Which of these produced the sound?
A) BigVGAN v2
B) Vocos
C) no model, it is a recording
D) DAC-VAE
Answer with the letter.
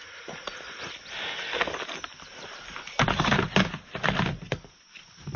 C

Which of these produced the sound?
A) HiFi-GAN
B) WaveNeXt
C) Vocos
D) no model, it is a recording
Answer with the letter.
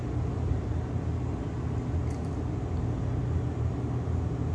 D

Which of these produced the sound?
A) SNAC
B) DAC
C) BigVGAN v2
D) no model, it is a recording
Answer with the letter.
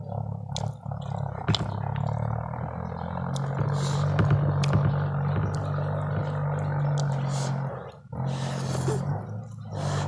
D